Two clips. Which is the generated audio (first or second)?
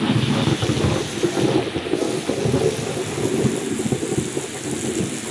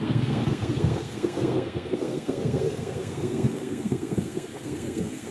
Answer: second